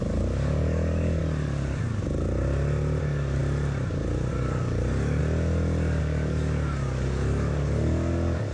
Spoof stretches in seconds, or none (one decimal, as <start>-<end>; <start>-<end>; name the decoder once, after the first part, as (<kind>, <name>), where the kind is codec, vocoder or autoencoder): 0.0-1.2 (codec, DAC); 3.0-3.4; 4.3-5.2; 6.0-8.5